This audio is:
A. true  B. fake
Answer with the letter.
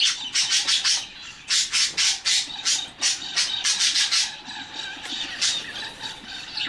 A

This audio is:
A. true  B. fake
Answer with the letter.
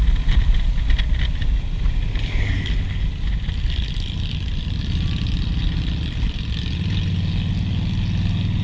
A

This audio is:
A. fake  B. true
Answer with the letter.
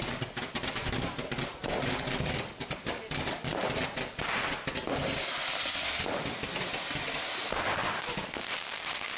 B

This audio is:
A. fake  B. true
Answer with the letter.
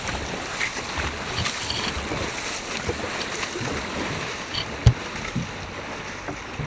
B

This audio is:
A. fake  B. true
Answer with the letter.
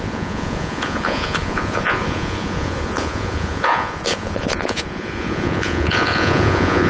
A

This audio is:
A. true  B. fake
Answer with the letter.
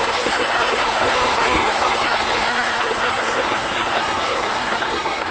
B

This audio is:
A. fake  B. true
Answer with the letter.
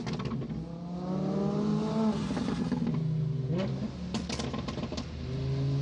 B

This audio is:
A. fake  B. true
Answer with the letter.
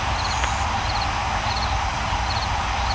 B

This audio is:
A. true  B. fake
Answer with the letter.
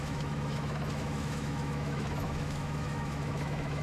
B